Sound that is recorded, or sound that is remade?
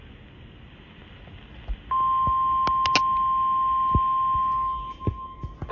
recorded